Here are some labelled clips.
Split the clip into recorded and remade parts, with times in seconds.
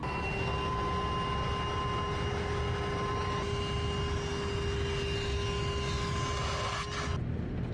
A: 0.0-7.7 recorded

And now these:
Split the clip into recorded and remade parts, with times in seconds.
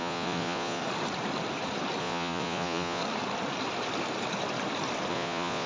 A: 0.0-0.8 remade; 0.8-2.0 recorded; 2.0-3.0 remade; 3.0-5.1 recorded; 5.1-5.7 remade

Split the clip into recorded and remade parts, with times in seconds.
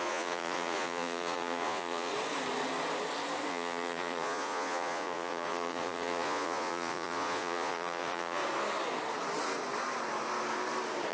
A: 0.0-2.1 remade; 2.1-3.5 recorded; 3.5-8.4 remade; 8.4-11.1 recorded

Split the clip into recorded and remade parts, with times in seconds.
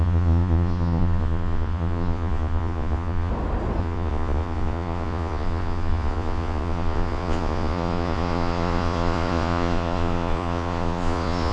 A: 0.0-3.3 remade; 3.3-3.8 recorded; 3.8-11.5 remade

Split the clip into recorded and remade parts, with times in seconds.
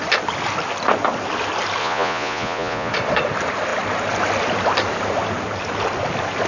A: 0.0-1.8 recorded; 1.8-2.9 remade; 2.9-6.5 recorded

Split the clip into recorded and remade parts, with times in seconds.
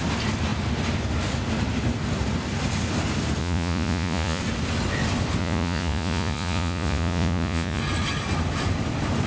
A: 0.0-3.4 recorded; 3.4-4.4 remade; 4.4-5.4 recorded; 5.4-7.8 remade; 7.8-9.3 recorded